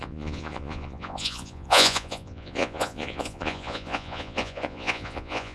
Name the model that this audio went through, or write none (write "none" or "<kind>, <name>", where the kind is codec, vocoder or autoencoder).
vocoder, Vocos